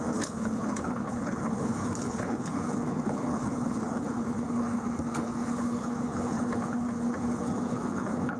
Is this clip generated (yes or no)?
yes